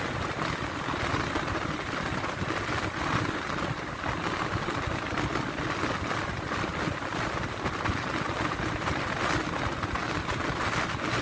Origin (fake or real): real